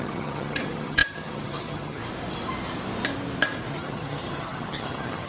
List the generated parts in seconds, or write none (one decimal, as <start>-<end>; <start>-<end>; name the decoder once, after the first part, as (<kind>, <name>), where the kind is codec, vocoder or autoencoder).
0.0-2.0 (vocoder, HiFi-GAN); 3.7-5.3